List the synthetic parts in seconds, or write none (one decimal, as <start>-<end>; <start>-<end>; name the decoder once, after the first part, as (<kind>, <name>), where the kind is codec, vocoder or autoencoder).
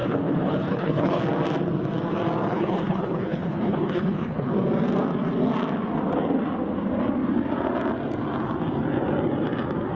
0.0-1.2 (codec, HILCodec); 2.5-4.5